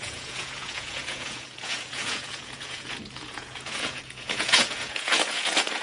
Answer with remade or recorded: remade